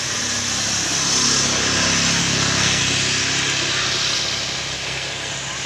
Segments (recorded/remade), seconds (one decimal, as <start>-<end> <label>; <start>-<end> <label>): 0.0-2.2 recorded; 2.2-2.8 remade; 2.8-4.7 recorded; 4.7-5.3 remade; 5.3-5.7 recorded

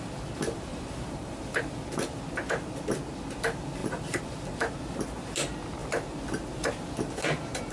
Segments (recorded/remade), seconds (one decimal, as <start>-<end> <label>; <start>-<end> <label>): 0.0-0.7 recorded; 0.7-1.6 remade; 1.6-3.8 recorded; 3.8-4.7 remade; 4.7-7.7 recorded

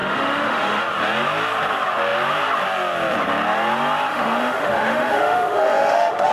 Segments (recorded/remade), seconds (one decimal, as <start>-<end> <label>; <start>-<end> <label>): 0.0-0.8 remade; 0.8-4.1 recorded; 4.1-6.3 remade

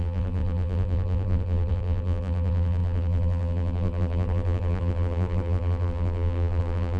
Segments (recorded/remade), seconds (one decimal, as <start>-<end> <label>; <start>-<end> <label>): 0.0-7.0 remade

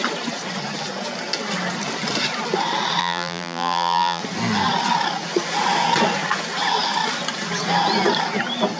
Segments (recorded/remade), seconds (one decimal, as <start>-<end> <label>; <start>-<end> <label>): 0.0-3.0 recorded; 3.0-4.2 remade; 4.2-8.8 recorded